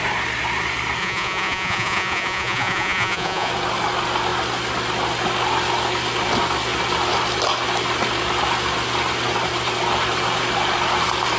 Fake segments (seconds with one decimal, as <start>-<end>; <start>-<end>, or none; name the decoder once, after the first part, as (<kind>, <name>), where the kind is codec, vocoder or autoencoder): 1.0-3.5 (vocoder, Vocos)